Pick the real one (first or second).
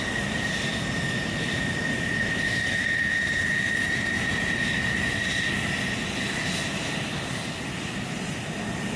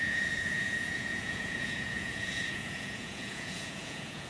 first